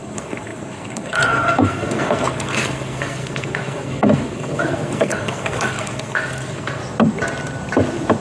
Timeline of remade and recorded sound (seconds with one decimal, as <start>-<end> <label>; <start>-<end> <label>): 0.0-6.8 remade; 6.8-8.2 recorded